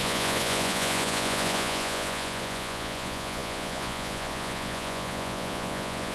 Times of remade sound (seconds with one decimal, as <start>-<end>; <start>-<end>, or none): 0.0-6.1